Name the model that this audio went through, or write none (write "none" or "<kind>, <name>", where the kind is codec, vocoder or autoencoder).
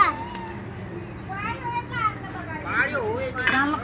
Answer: none